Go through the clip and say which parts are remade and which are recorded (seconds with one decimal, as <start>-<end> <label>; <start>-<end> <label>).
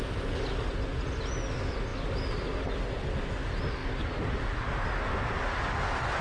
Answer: 0.0-6.2 recorded